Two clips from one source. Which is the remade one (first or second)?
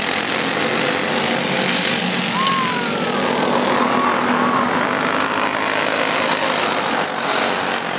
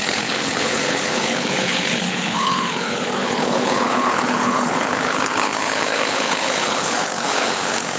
second